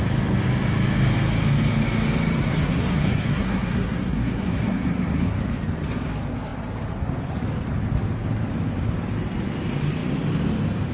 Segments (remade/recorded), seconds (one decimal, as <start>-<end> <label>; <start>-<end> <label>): 0.0-2.4 recorded; 2.4-5.4 remade; 5.4-10.9 recorded